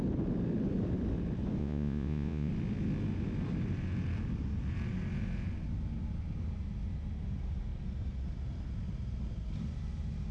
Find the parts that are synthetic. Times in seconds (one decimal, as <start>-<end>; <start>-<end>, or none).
1.6-2.5

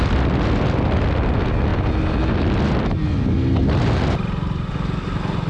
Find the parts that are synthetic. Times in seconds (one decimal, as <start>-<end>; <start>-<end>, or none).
none

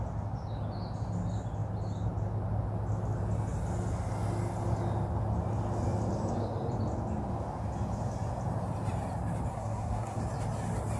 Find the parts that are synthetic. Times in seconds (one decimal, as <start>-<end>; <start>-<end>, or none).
9.5-10.2